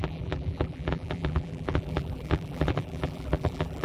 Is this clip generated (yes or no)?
yes